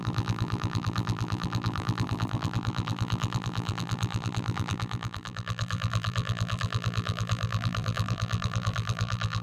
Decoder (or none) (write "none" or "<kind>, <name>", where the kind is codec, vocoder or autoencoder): vocoder, BigVGAN v2